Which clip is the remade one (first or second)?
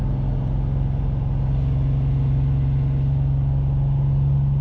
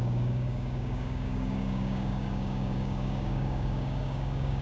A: second